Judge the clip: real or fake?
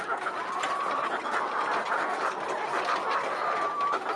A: real